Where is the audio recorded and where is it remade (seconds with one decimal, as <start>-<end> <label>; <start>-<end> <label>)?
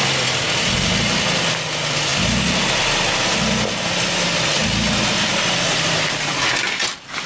0.0-7.3 recorded